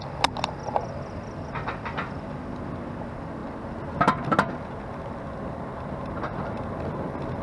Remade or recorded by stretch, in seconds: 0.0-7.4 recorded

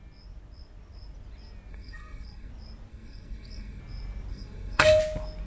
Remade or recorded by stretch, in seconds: 0.0-1.7 recorded; 1.7-2.5 remade; 2.5-2.9 recorded; 2.9-3.8 remade; 3.8-4.3 recorded; 4.3-5.0 remade; 5.0-5.5 recorded

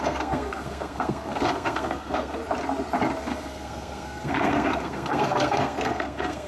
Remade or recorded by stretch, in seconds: 0.0-2.4 remade; 2.4-3.2 recorded; 3.2-6.5 remade